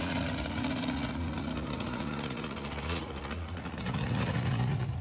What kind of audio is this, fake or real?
fake